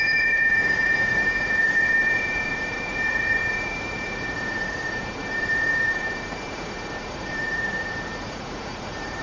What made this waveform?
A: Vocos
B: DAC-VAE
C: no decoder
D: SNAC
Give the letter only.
A